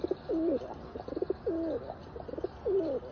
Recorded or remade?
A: recorded